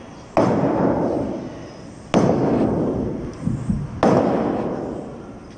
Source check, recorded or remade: recorded